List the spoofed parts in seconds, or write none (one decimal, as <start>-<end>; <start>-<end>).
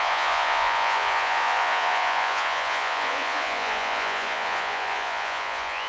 0.0-5.9